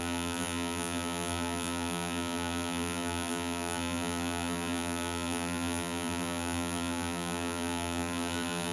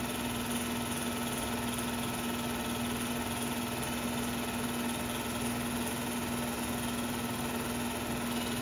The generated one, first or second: first